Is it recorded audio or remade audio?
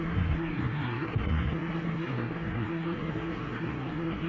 remade